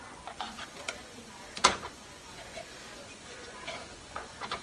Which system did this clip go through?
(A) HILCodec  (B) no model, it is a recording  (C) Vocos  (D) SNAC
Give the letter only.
C